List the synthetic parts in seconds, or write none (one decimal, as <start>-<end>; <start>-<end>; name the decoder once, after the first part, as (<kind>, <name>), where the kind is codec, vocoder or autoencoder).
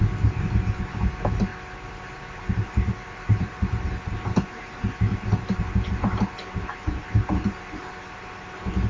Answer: 1.5-3.7 (vocoder, BigVGAN v2)